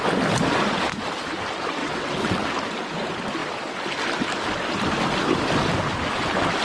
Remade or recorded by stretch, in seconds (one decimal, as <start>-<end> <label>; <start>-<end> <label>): 0.0-1.8 recorded; 1.8-2.5 remade; 2.5-6.6 recorded